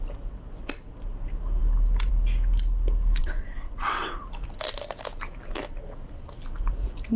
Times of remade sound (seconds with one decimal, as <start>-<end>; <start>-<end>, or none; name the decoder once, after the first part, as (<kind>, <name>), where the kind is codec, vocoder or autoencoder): 3.2-4.2 (vocoder, WaveNeXt)